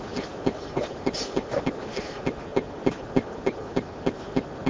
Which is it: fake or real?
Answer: real